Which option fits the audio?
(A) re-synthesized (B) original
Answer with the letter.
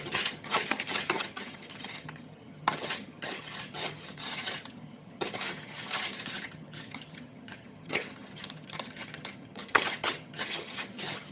A